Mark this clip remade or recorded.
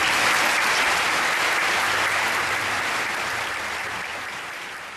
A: recorded